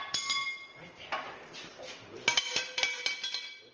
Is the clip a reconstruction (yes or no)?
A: no